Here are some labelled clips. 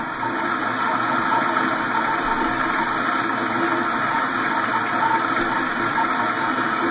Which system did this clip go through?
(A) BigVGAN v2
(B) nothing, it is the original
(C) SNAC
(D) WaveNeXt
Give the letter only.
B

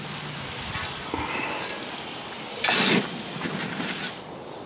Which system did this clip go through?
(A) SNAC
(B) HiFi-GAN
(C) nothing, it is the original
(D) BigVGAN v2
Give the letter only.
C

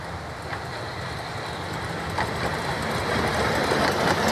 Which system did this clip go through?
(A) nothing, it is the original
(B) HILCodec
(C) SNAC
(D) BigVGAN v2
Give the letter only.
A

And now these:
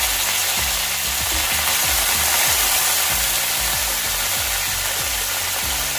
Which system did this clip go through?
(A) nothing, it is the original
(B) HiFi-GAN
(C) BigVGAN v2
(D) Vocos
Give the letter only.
A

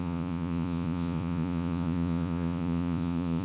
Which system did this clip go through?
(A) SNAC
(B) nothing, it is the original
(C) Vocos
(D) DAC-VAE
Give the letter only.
C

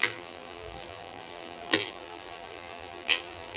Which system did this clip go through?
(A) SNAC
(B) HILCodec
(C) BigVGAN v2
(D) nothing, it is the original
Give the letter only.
C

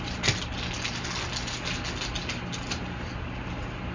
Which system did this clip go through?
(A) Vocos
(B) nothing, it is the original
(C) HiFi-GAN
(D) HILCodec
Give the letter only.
B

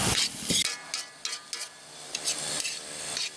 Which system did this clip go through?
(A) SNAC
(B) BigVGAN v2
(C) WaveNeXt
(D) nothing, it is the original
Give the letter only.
D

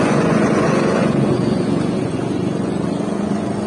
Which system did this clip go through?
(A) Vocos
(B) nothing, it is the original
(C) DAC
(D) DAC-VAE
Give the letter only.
A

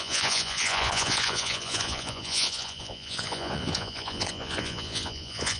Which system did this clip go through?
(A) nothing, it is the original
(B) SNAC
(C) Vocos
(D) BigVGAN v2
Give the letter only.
C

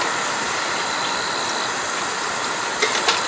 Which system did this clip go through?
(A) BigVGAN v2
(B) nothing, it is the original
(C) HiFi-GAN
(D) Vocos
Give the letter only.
B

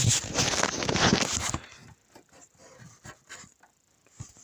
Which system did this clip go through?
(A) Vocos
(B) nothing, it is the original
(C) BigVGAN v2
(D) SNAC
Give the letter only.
B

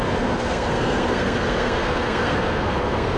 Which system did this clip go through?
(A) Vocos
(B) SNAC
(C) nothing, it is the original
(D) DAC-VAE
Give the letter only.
B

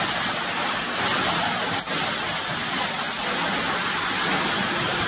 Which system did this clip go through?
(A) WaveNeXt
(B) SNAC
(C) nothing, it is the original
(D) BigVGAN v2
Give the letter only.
C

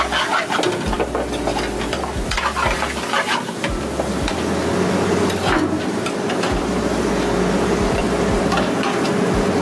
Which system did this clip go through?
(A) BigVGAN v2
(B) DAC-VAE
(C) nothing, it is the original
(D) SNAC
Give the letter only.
C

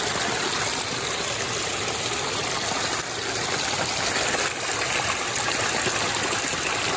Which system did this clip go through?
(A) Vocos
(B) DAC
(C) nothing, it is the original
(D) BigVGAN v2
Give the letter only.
C